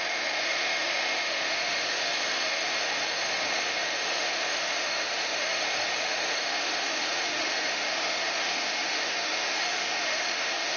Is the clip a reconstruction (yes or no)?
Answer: yes